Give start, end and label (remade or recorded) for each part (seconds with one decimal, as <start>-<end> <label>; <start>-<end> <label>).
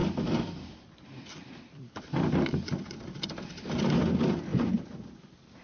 0.0-3.4 remade; 3.4-5.6 recorded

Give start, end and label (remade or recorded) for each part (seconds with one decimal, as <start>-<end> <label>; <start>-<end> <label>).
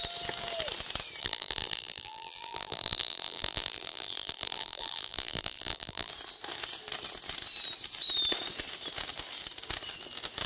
0.0-1.2 recorded; 1.2-6.1 remade; 6.1-10.5 recorded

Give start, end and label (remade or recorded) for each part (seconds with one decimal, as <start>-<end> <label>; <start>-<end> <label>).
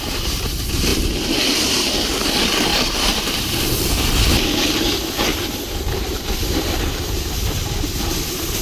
0.0-2.7 recorded; 2.7-3.9 remade; 3.9-8.6 recorded